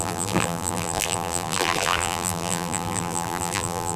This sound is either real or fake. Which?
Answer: fake